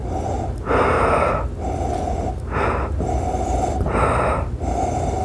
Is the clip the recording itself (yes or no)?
yes